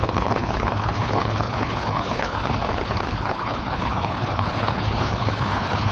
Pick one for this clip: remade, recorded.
remade